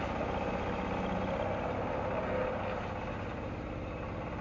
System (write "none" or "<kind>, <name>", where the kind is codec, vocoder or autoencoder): none